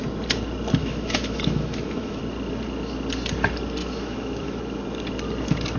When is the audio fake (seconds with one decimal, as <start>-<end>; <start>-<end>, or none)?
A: 0.8-2.2; 3.8-4.6